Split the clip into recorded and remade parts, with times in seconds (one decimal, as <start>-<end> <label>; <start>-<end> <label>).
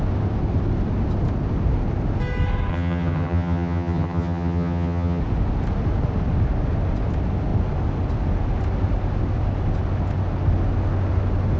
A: 0.0-2.7 recorded; 2.7-5.2 remade; 5.2-11.6 recorded